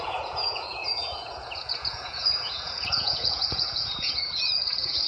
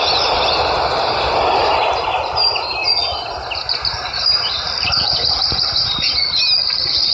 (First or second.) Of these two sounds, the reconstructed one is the first